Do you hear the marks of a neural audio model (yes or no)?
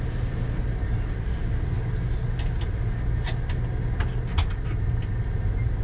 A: no